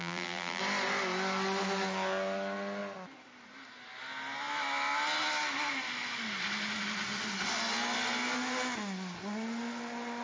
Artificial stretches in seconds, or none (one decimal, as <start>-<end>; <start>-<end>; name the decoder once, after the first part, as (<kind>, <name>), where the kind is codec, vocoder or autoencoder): 0.0-0.6 (vocoder, BigVGAN v2)